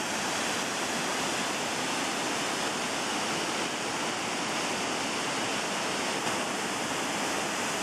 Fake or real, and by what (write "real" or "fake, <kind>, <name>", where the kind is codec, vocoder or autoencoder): real